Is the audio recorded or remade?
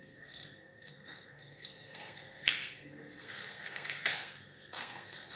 remade